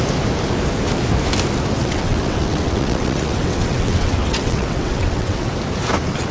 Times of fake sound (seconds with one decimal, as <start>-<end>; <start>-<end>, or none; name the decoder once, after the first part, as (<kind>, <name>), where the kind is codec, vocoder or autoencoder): 1.8-5.5 (vocoder, WaveNeXt)